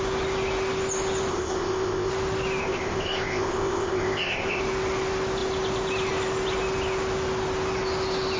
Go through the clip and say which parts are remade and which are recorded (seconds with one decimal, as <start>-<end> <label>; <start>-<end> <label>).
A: 0.0-1.3 recorded; 1.3-2.1 remade; 2.1-2.6 recorded; 2.6-4.6 remade; 4.6-8.4 recorded